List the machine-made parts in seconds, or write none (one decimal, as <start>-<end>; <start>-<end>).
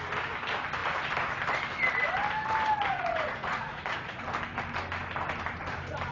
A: 2.9-4.2